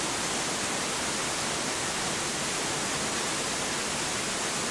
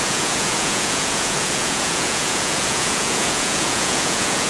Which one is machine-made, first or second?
second